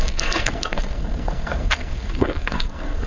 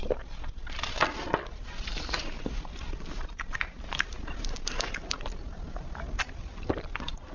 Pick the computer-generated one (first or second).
first